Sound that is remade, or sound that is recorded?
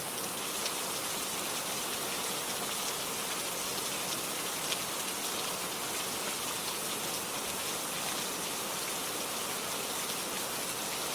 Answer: recorded